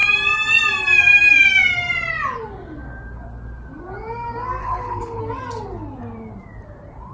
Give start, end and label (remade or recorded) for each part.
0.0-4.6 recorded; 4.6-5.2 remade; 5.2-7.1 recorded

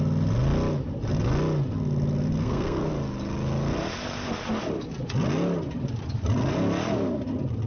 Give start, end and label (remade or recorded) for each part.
0.0-2.4 recorded; 2.4-2.9 remade; 2.9-7.7 recorded

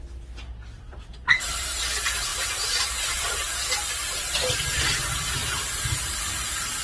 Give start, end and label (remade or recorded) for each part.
0.0-0.7 recorded; 0.7-1.8 remade; 1.8-2.3 recorded; 2.3-4.8 remade; 4.8-6.8 recorded